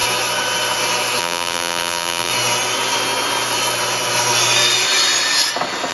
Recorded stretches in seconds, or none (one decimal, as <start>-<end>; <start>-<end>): 0.0-1.2; 2.3-5.9